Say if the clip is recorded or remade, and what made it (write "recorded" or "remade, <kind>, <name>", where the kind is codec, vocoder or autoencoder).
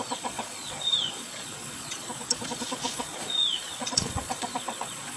remade, vocoder, Vocos